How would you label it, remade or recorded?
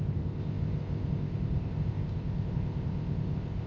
remade